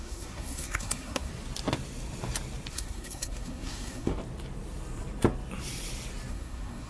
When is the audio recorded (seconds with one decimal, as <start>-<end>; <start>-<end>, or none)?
1.3-2.7; 4.1-6.3